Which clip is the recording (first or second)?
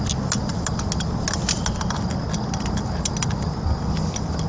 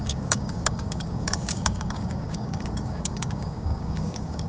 first